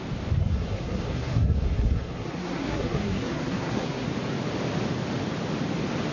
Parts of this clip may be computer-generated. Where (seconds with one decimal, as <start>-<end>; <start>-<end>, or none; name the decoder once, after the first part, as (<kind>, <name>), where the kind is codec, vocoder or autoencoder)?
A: 0.4-4.1 (codec, SNAC)